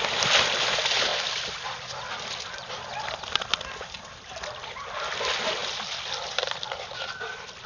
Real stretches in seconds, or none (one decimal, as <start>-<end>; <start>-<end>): 0.0-7.7